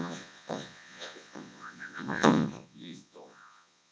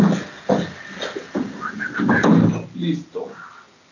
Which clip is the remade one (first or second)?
first